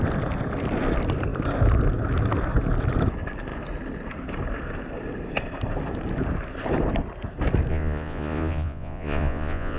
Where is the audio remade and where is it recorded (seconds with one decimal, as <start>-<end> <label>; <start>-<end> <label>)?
0.0-7.7 recorded; 7.7-9.8 remade